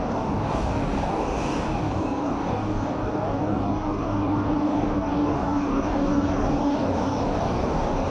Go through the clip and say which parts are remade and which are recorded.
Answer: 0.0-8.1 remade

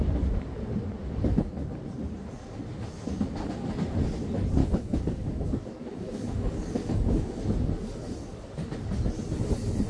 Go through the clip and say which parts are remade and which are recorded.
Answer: 0.0-4.6 recorded; 4.6-7.4 remade; 7.4-9.9 recorded

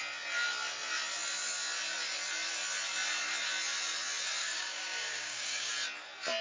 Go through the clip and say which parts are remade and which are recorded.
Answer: 0.0-4.4 recorded; 4.4-5.7 remade; 5.7-6.4 recorded

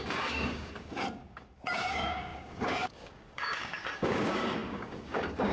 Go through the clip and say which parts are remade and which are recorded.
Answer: 0.0-5.5 remade

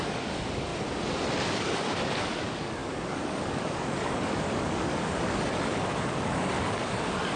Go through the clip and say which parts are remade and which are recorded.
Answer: 0.0-0.7 remade; 0.7-1.6 recorded; 1.6-7.4 remade

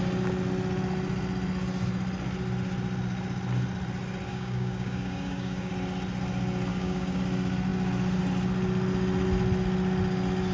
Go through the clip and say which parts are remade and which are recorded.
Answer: 0.0-4.3 recorded; 4.3-5.7 remade; 5.7-6.7 recorded; 6.7-7.2 remade; 7.2-10.5 recorded

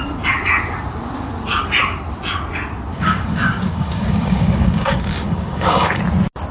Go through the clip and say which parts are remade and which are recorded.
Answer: 0.0-2.9 recorded; 2.9-6.0 remade; 6.0-6.5 recorded